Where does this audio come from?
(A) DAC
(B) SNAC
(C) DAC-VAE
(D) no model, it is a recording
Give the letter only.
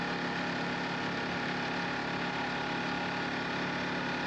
D